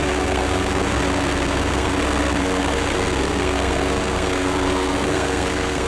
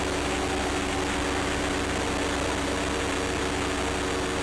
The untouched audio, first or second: second